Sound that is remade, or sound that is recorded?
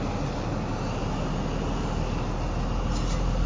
recorded